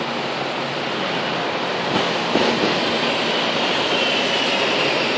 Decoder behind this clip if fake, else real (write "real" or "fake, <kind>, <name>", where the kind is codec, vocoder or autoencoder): real